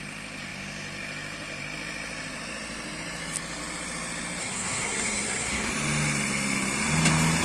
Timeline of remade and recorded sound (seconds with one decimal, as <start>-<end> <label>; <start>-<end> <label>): 0.0-4.4 recorded; 4.4-5.7 remade; 5.7-7.4 recorded